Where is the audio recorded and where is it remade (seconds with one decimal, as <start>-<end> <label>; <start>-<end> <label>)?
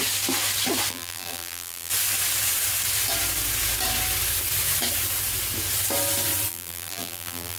0.0-0.9 recorded; 0.9-1.9 remade; 1.9-6.5 recorded; 6.5-7.6 remade